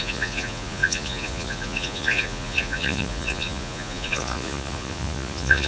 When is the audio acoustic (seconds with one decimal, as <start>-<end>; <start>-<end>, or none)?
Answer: none